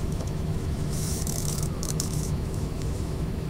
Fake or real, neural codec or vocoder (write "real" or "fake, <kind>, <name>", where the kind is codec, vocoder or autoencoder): fake, autoencoder, DAC-VAE